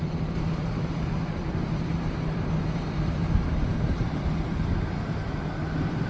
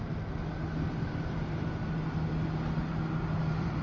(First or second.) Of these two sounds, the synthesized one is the first